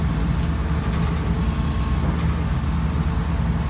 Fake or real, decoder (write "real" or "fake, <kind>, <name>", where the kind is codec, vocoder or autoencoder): real